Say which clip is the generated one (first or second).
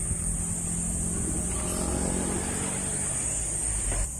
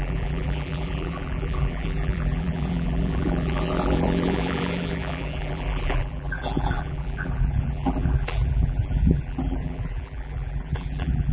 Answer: second